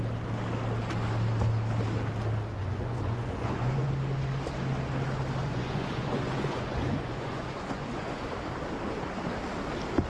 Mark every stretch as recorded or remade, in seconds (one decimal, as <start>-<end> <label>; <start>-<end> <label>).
0.0-2.5 recorded; 2.5-3.9 remade; 3.9-5.4 recorded; 5.4-8.3 remade; 8.3-10.1 recorded